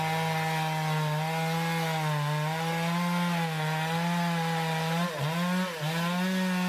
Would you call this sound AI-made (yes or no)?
no